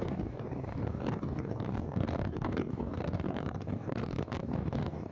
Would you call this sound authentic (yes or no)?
no